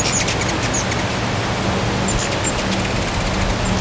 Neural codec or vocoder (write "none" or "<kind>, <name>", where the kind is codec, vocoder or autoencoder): none